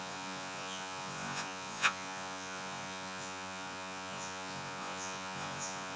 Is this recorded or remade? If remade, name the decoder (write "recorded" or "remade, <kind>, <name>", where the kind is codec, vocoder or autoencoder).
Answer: remade, vocoder, Vocos